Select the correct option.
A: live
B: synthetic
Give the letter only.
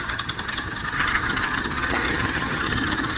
B